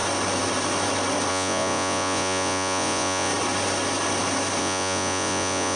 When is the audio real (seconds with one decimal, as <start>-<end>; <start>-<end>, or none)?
0.0-1.3; 3.3-4.6